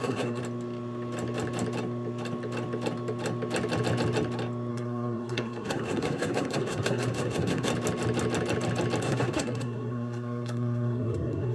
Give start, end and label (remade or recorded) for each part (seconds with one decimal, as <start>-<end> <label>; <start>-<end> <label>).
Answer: 0.0-0.4 remade; 0.4-4.7 recorded; 4.7-7.7 remade; 7.7-9.0 recorded; 9.0-11.5 remade